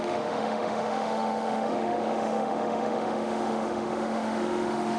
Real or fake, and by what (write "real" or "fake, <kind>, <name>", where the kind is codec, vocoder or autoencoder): fake, autoencoder, DAC-VAE